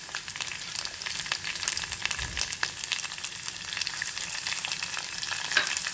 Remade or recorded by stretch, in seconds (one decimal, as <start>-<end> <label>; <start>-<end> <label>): 0.0-5.9 recorded